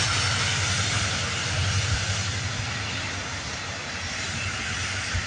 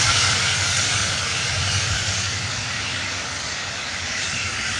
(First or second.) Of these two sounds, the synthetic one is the second